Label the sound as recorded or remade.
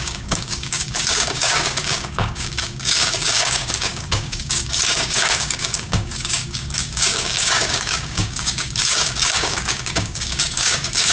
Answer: remade